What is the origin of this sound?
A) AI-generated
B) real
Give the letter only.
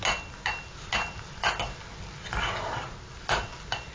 B